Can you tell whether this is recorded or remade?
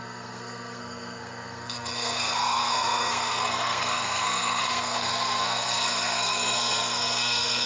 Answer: remade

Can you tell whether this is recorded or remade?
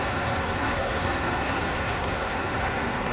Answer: remade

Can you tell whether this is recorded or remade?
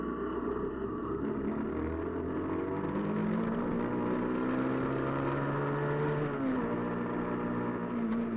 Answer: recorded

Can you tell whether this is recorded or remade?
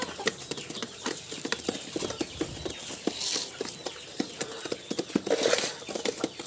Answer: recorded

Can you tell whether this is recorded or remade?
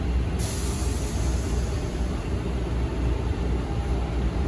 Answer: recorded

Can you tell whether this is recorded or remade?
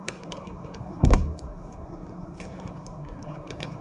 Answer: remade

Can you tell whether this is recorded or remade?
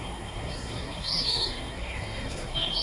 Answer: remade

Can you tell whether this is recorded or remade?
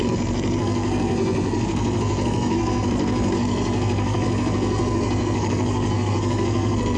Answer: remade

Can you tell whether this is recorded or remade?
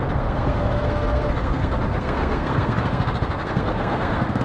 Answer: remade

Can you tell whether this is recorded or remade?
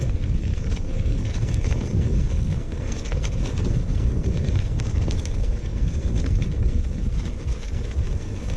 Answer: remade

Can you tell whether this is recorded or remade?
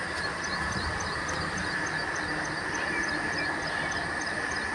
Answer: recorded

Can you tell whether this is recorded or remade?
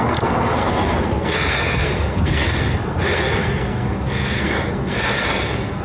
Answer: remade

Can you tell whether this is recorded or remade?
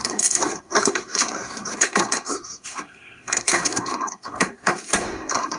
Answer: remade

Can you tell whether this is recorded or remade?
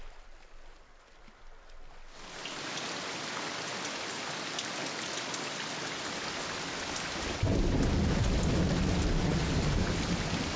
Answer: recorded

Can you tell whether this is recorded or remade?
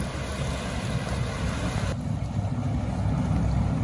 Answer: recorded